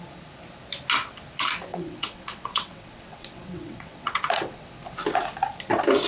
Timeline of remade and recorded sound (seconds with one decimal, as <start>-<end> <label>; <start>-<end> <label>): 0.0-1.7 recorded; 1.7-4.7 remade; 4.7-6.1 recorded

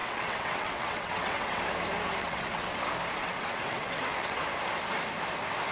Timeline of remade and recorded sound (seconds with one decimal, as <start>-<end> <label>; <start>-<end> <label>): 0.0-1.6 remade; 1.6-2.2 recorded; 2.2-2.8 remade; 2.8-3.2 recorded; 3.2-4.4 remade; 4.4-5.7 recorded

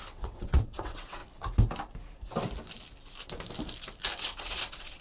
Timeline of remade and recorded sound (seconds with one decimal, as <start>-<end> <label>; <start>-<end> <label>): 0.0-1.2 remade; 1.2-4.2 recorded; 4.2-5.0 remade

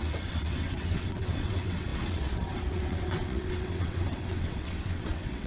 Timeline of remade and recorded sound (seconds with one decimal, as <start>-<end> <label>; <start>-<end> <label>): 0.0-5.5 remade

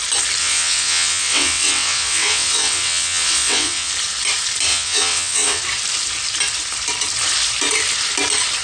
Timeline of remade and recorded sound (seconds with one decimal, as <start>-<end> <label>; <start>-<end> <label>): 0.0-0.4 recorded; 0.4-3.9 remade; 3.9-4.7 recorded; 4.7-5.6 remade; 5.6-8.6 recorded